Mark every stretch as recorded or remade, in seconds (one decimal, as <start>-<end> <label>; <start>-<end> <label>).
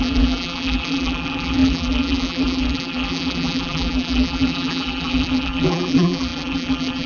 0.0-7.1 remade